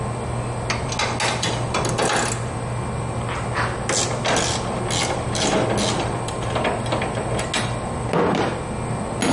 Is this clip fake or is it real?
real